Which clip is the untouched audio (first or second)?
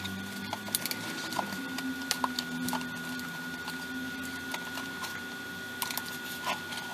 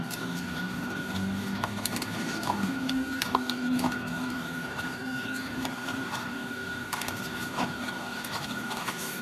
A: first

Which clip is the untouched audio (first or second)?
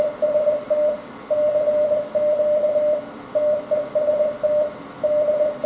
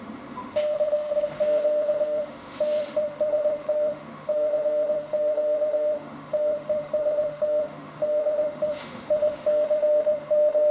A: first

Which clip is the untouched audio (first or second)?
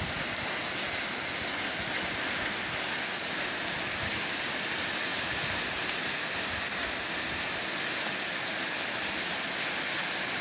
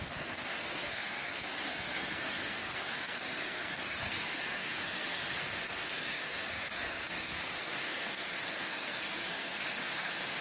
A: first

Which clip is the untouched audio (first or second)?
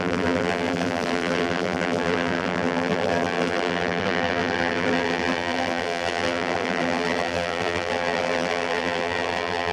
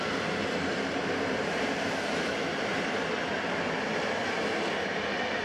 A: second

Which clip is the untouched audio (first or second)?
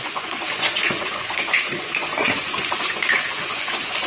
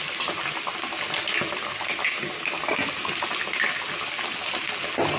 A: second